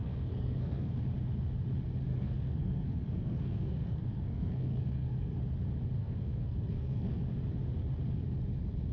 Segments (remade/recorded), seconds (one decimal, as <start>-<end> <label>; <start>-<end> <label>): 0.0-1.0 remade; 1.0-2.1 recorded; 2.1-5.4 remade; 5.4-6.0 recorded; 6.0-7.2 remade; 7.2-8.9 recorded